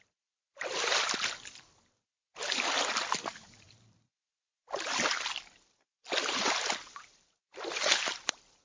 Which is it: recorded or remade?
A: recorded